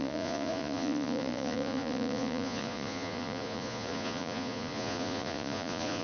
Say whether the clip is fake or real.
fake